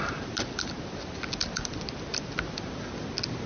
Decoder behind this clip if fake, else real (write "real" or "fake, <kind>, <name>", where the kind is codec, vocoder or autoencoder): real